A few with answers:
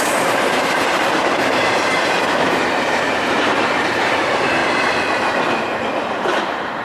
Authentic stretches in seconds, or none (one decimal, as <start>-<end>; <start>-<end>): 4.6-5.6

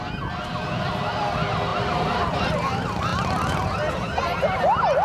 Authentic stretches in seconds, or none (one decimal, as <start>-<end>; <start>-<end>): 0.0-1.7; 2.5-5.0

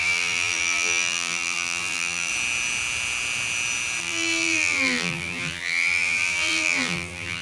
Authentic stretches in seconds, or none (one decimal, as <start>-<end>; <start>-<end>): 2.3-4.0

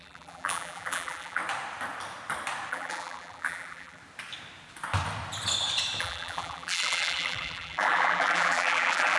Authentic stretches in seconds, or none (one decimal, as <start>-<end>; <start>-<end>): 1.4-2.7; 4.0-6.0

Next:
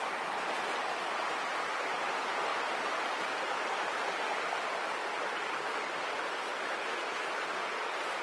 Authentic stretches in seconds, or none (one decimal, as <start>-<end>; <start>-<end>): 0.0-2.5; 3.7-5.0; 5.7-8.2

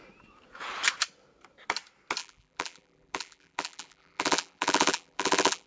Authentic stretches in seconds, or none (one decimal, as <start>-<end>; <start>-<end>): 0.0-2.2

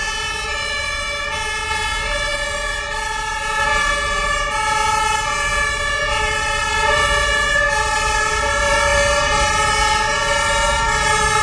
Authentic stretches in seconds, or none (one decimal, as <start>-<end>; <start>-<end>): none